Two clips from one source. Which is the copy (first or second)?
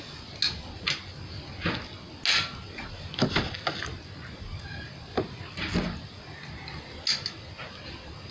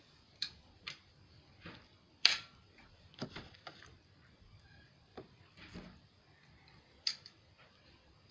second